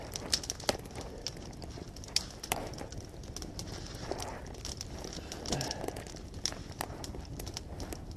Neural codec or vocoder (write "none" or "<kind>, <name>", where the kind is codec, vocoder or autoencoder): none